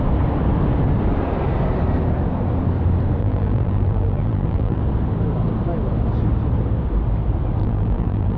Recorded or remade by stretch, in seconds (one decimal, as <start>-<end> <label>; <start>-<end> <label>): 0.0-3.2 recorded; 3.2-4.8 remade; 4.8-7.6 recorded; 7.6-8.4 remade